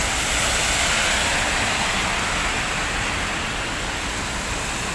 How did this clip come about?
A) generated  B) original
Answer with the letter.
B